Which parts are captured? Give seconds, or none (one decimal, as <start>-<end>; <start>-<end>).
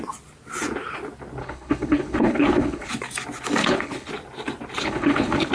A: 0.0-1.4; 2.9-3.6; 4.1-4.8